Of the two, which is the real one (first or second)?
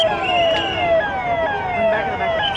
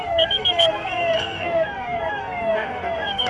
first